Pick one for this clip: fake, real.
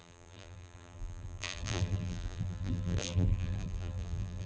fake